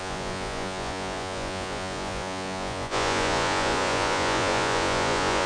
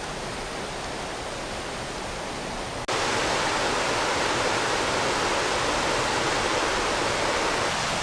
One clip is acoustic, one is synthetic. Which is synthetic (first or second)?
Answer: first